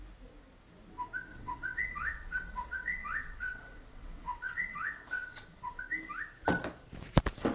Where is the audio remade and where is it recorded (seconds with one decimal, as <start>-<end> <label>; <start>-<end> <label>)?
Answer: 0.0-1.3 recorded; 1.3-5.8 remade; 5.8-7.5 recorded

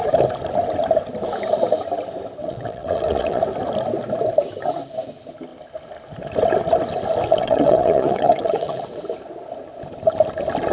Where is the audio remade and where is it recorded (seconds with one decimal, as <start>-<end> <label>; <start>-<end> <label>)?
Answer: 0.0-2.4 recorded; 2.4-3.4 remade; 3.4-7.3 recorded; 7.3-9.0 remade; 9.0-10.7 recorded

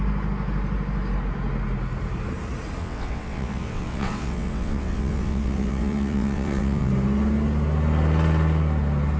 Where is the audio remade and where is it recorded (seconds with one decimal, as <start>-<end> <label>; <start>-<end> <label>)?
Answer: 0.0-2.8 recorded; 2.8-6.9 remade; 6.9-9.2 recorded

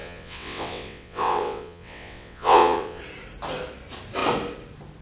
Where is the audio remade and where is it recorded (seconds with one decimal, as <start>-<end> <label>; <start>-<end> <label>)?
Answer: 0.0-3.0 remade; 3.0-5.0 recorded

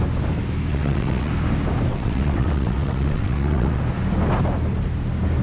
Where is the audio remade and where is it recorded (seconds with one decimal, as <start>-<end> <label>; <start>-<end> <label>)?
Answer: 0.0-0.7 recorded; 0.7-1.3 remade; 1.3-1.9 recorded; 1.9-3.8 remade; 3.8-5.4 recorded